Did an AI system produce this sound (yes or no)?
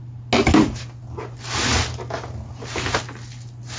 no